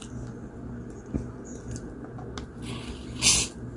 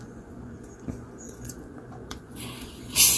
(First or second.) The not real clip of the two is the second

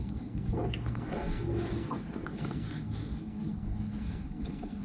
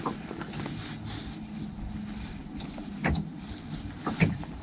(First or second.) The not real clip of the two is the first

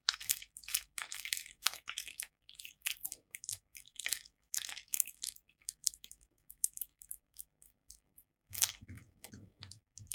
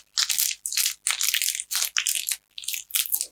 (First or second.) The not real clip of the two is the first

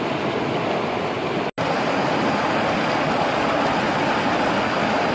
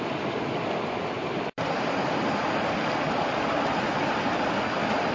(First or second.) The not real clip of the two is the second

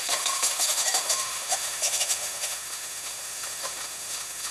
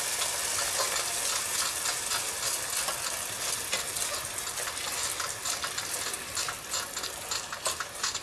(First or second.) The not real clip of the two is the first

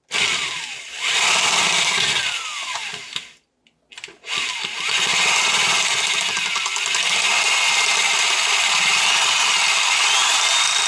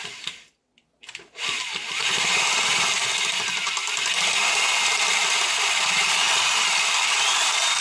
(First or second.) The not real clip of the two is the second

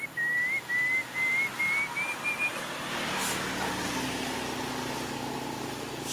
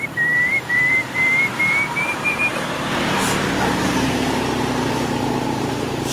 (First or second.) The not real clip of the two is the second